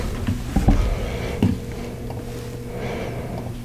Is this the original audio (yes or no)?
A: yes